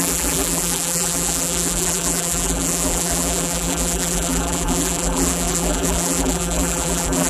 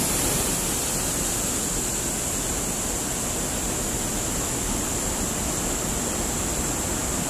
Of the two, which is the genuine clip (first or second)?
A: second